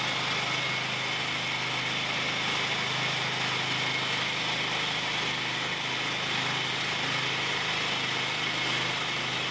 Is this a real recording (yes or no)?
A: yes